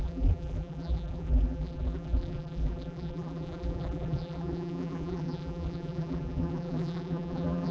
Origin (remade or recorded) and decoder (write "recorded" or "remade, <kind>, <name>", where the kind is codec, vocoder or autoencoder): remade, vocoder, BigVGAN v2